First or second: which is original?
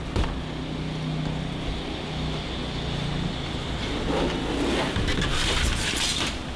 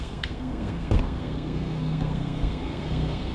first